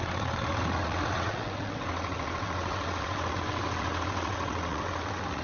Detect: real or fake fake